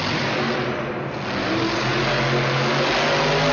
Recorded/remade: recorded